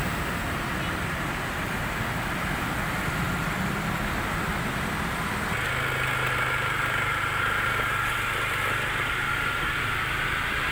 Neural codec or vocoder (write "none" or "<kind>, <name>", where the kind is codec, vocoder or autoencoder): none